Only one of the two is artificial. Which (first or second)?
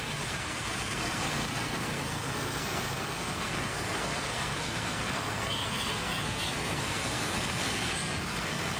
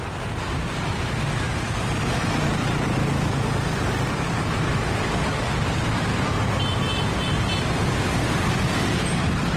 first